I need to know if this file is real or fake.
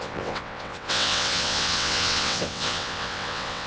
fake